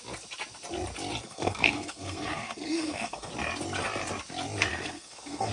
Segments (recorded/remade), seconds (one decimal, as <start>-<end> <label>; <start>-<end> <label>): 0.0-1.2 recorded; 1.2-3.3 remade; 3.3-4.7 recorded; 4.7-5.5 remade